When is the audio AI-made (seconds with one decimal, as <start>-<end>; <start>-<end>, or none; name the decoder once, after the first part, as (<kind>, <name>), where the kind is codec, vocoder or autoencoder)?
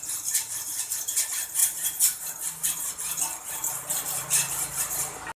none